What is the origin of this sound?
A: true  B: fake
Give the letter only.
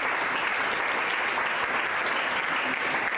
A